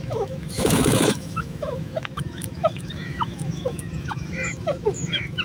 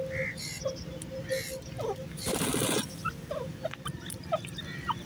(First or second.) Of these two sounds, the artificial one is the first